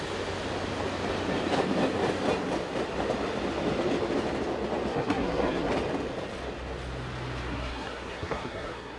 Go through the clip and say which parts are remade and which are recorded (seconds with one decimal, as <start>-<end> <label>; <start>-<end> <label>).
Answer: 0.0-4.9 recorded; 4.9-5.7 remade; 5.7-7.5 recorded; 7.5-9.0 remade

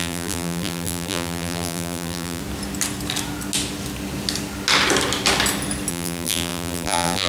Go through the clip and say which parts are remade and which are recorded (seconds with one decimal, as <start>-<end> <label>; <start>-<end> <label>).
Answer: 0.0-2.4 remade; 2.4-5.9 recorded; 5.9-7.3 remade

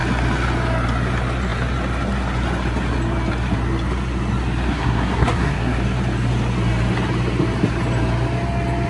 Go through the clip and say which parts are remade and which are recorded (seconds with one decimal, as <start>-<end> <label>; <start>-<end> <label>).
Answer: 0.0-4.7 recorded; 4.7-5.8 remade; 5.8-8.9 recorded

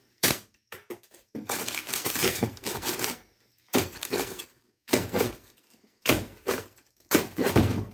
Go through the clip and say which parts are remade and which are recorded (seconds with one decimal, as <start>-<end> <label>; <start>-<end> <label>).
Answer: 0.0-7.9 remade

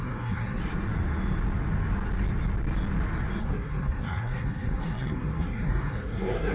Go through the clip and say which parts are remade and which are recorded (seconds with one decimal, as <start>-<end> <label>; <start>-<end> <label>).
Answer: 0.0-0.6 remade; 0.6-3.4 recorded; 3.4-6.5 remade

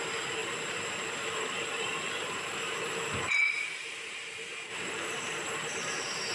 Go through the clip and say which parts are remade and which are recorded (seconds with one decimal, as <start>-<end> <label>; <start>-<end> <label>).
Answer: 0.0-6.3 remade